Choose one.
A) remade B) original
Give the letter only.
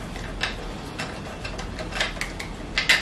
B